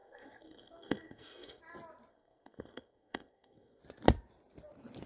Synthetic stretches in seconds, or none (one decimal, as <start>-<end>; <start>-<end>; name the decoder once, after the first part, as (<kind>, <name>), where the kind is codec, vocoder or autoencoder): 0.0-1.6 (codec, SNAC); 2.1-3.8

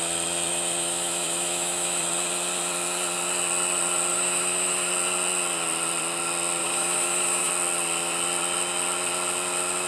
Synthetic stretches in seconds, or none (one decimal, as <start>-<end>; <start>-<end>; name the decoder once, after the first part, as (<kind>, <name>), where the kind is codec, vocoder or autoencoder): 0.5-2.0 (autoencoder, DAC-VAE); 4.1-4.9; 6.6-7.5

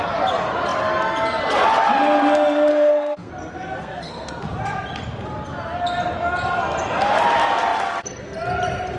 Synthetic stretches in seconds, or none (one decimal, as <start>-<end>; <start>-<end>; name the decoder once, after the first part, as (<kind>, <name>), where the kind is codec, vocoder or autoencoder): 2.7-3.3 (codec, SNAC); 3.8-4.4

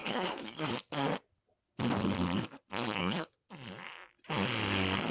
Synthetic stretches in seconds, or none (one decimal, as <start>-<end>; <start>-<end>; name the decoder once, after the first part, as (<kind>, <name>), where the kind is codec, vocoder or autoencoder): 0.0-0.7 (codec, SNAC); 3.0-3.5

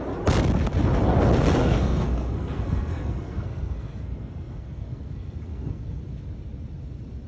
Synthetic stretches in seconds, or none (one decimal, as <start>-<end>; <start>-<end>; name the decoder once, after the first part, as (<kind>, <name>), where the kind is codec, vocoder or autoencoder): 1.6-6.0 (codec, SNAC)

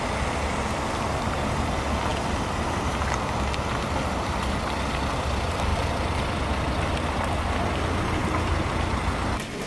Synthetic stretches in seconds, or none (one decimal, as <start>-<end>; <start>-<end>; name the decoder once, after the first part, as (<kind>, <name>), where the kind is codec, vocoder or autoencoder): none

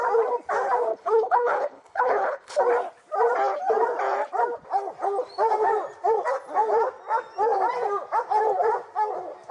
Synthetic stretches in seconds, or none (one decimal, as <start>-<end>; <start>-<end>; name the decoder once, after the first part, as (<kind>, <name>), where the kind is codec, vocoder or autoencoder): 0.9-2.6 (codec, HILCodec)